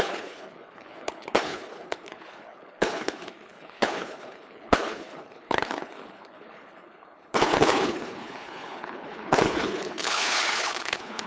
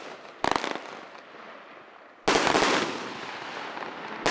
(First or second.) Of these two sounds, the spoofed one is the first